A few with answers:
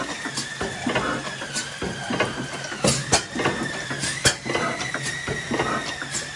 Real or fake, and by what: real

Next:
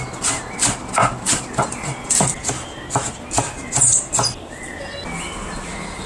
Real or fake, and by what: real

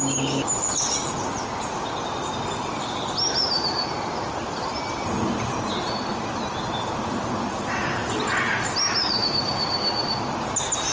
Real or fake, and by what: real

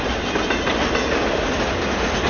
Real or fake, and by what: real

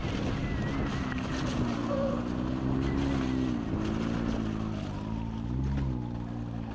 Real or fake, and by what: real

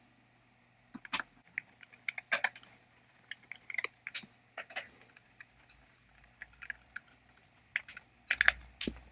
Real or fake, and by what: real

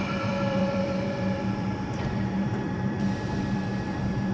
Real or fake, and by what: fake, vocoder, BigVGAN v2